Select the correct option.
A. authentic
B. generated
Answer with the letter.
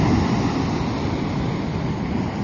A